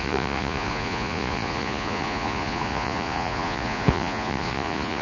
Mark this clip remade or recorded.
remade